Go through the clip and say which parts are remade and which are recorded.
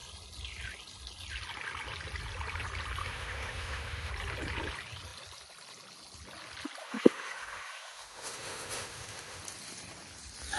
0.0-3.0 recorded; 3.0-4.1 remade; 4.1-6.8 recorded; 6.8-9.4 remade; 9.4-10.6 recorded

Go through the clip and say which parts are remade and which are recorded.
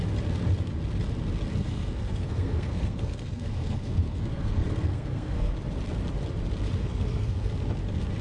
0.0-1.6 recorded; 1.6-5.5 remade; 5.5-6.8 recorded; 6.8-7.5 remade; 7.5-8.2 recorded